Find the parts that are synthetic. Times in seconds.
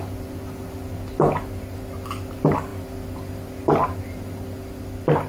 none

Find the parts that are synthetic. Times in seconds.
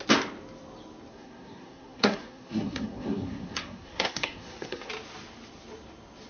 1.1-4.9 (codec, SNAC)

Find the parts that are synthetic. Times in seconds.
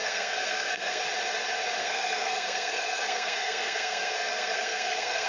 0.0-1.0 (codec, SNAC); 1.8-5.3